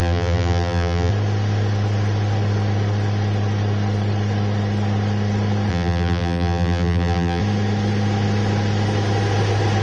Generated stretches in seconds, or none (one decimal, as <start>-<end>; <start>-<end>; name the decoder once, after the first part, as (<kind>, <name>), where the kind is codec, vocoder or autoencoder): 0.0-1.1 (vocoder, BigVGAN v2); 5.7-7.4